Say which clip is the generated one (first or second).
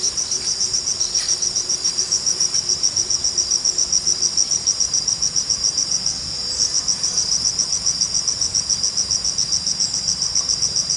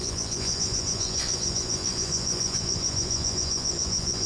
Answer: second